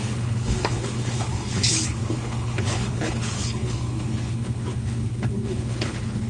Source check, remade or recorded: remade